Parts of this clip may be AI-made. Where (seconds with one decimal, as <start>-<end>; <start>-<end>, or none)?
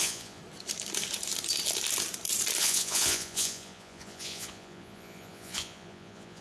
0.0-0.4; 2.6-6.4